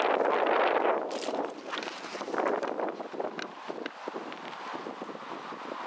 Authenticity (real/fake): real